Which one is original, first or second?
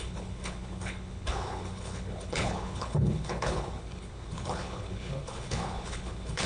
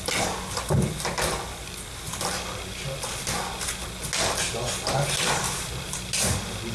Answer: second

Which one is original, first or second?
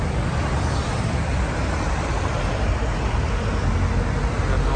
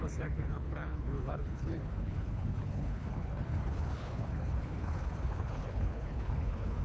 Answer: first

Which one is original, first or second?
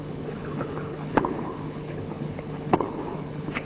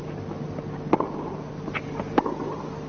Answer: second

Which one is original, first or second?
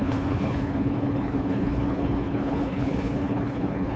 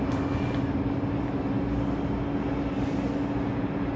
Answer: second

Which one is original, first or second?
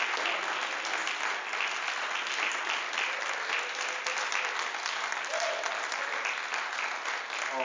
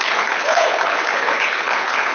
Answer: first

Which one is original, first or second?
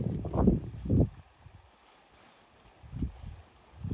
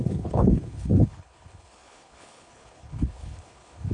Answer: first